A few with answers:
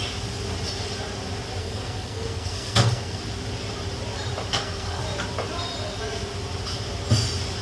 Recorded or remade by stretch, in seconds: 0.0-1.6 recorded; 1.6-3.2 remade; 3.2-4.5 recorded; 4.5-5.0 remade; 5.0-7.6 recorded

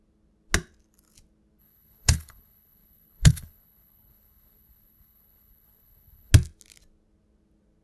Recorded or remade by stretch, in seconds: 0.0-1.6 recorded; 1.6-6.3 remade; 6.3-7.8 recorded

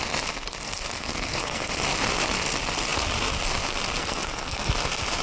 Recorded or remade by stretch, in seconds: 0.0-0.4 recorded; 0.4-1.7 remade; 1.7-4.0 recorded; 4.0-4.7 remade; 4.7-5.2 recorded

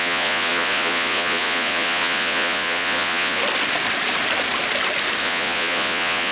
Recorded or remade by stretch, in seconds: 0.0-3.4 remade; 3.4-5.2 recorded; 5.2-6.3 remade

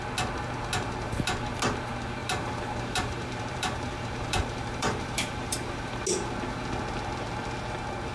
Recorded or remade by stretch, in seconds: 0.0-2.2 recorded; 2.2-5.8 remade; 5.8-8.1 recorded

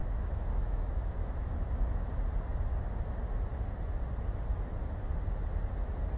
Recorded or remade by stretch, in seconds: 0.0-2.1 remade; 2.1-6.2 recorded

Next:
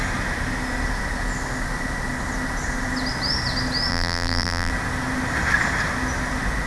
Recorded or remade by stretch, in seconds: 0.0-3.9 recorded; 3.9-4.7 remade; 4.7-6.7 recorded